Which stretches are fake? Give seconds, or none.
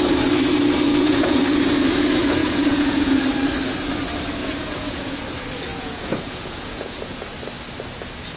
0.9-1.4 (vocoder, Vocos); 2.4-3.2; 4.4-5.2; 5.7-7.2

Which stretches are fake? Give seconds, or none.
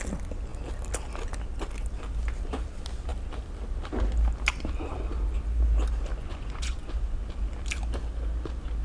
6.2-7.2 (vocoder, Vocos)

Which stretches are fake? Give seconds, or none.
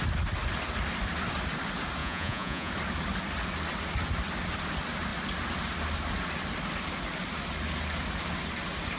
2.0-2.7 (vocoder, Vocos)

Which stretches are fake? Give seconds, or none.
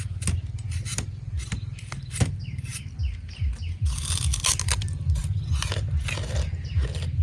none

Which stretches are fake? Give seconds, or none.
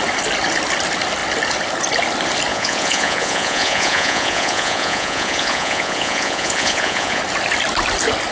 2.5-7.2 (vocoder, Vocos)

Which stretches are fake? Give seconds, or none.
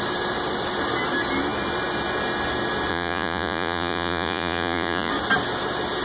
2.9-5.1 (vocoder, Vocos)